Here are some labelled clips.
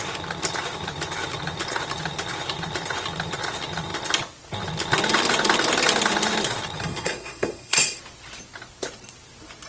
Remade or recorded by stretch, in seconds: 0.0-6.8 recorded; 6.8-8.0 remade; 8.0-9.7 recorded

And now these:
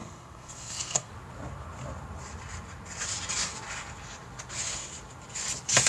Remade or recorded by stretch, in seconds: 0.0-1.1 remade; 1.1-5.9 recorded